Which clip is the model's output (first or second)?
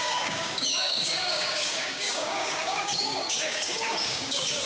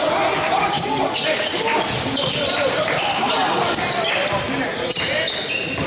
first